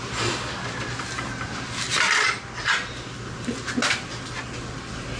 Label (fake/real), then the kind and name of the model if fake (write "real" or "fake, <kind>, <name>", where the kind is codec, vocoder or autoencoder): real